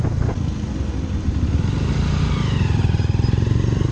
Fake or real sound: real